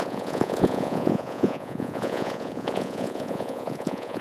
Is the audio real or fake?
fake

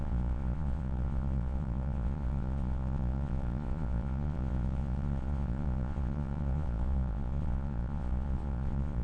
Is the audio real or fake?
fake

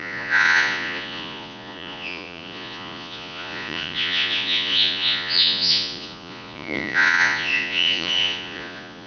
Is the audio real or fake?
fake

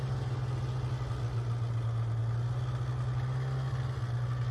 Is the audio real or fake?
real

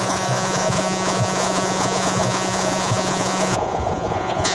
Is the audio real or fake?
fake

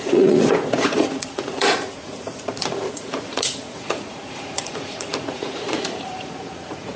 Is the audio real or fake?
fake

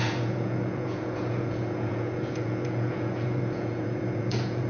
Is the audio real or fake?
fake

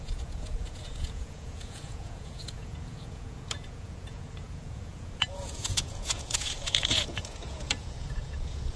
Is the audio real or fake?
fake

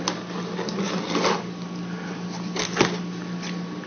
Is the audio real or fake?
real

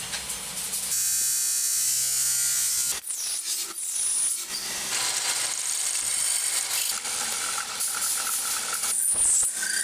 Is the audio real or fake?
real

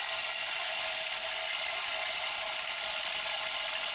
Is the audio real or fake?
real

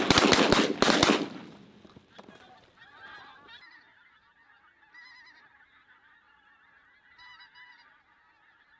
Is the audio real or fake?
real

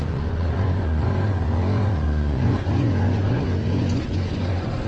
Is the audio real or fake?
fake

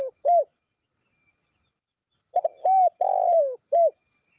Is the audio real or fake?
real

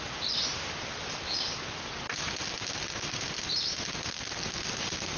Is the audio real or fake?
real